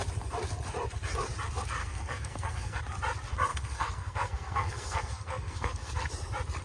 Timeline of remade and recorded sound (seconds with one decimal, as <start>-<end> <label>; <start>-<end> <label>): 0.0-1.8 recorded; 1.8-2.8 remade; 2.8-3.5 recorded; 3.5-5.9 remade; 5.9-6.6 recorded